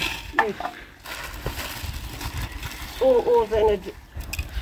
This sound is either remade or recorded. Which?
recorded